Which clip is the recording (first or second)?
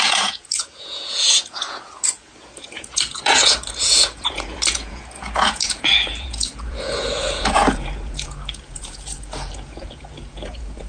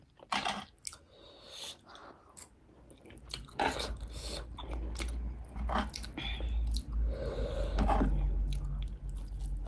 second